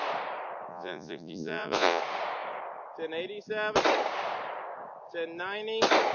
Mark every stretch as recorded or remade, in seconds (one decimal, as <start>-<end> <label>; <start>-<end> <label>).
0.0-0.7 recorded; 0.7-2.0 remade; 2.0-6.1 recorded